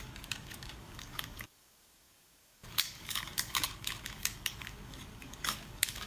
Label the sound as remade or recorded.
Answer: remade